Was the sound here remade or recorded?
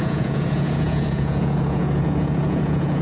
remade